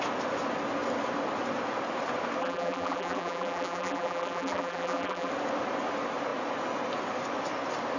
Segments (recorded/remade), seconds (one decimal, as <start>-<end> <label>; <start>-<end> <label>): 0.0-2.4 recorded; 2.4-5.3 remade; 5.3-8.0 recorded